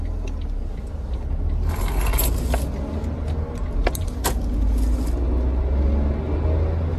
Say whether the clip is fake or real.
real